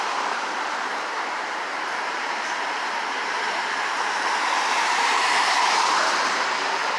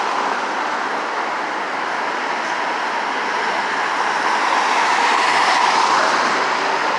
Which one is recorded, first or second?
second